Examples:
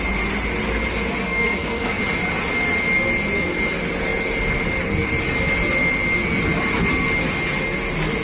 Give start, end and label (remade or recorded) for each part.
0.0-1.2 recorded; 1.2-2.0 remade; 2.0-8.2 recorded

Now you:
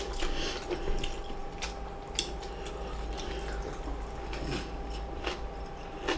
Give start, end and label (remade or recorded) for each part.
0.0-6.2 recorded

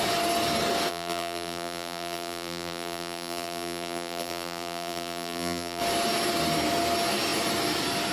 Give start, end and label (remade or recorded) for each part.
0.0-0.9 recorded; 0.9-5.8 remade; 5.8-8.1 recorded

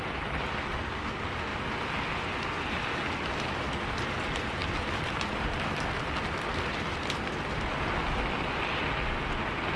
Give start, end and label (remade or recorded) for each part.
0.0-9.8 recorded